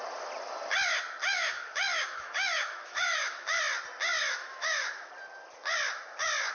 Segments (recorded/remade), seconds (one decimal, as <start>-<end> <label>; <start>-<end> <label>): 0.0-1.2 recorded; 1.2-3.6 remade; 3.6-4.2 recorded; 4.2-5.1 remade; 5.1-6.5 recorded